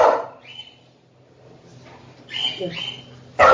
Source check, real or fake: real